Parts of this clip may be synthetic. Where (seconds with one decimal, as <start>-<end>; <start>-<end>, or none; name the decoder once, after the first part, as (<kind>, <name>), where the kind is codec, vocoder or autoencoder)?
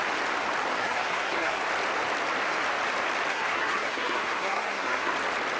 0.8-1.6 (codec, SNAC); 3.3-5.1